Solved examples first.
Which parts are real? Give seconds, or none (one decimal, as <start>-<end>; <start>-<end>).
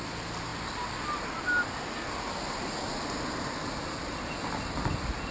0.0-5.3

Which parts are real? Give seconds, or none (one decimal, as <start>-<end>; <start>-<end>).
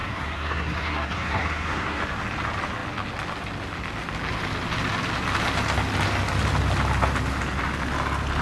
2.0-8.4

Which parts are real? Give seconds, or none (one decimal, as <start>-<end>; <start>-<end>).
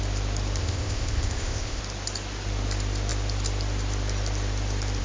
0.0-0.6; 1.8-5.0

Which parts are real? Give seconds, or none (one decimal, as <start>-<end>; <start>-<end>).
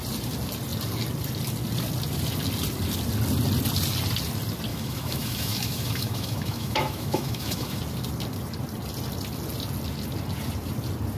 0.0-4.7; 7.8-11.2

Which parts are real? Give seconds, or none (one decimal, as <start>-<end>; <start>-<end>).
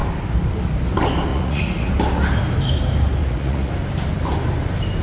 0.0-1.3; 1.9-3.2; 3.7-5.0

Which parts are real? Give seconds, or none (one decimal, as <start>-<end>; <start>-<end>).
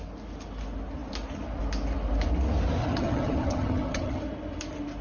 0.0-2.8; 4.2-5.0